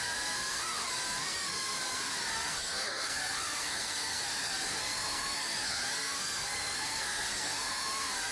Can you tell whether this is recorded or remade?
remade